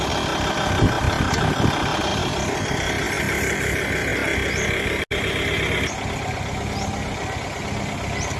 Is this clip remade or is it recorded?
recorded